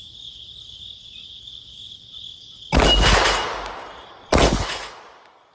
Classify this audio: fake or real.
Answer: real